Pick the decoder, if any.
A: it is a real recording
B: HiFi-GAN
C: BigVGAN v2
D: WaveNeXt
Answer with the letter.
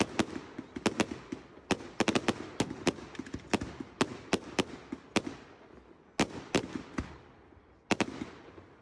A